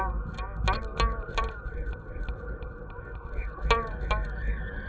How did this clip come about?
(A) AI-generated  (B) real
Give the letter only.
B